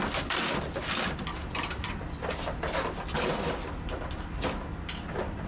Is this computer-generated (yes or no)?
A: no